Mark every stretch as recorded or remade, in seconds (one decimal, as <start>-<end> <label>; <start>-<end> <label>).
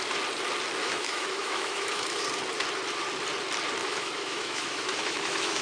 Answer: 0.0-0.8 recorded; 0.8-2.2 remade; 2.2-3.8 recorded; 3.8-5.6 remade